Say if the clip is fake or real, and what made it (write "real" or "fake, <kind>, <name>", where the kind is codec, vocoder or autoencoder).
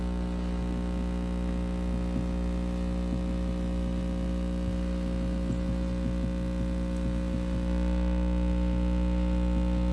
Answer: real